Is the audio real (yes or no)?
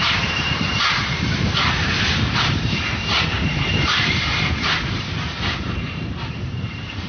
no